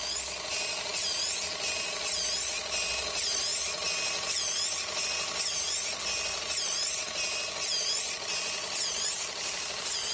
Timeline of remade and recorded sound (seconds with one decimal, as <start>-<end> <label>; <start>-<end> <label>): 0.0-8.6 recorded; 8.6-10.1 remade